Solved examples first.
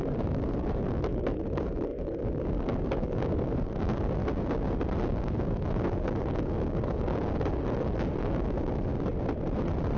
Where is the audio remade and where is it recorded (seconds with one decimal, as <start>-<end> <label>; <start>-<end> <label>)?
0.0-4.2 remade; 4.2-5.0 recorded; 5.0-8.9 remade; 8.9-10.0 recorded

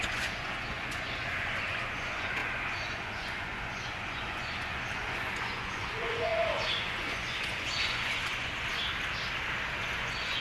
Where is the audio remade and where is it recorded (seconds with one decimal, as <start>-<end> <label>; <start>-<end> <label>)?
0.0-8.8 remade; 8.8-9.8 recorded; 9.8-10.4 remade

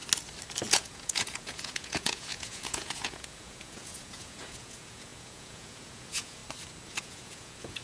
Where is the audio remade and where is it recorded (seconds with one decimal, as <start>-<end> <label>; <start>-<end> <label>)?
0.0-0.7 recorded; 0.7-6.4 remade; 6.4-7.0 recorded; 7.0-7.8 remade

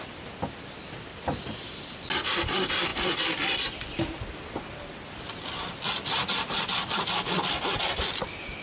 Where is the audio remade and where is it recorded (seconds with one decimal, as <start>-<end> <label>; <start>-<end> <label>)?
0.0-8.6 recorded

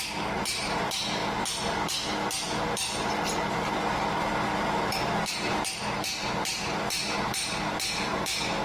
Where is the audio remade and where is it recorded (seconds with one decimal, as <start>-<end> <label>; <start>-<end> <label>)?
0.0-8.6 recorded